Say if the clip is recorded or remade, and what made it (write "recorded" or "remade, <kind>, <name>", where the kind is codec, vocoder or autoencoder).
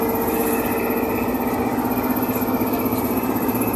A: recorded